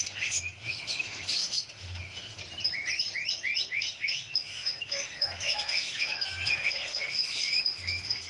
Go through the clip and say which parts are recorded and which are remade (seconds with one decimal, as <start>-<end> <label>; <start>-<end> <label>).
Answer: 0.0-2.4 remade; 2.4-3.7 recorded; 3.7-8.3 remade